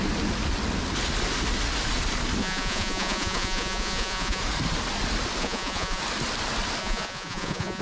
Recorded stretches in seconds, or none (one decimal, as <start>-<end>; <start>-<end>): 0.0-2.4; 4.4-5.4; 6.0-6.8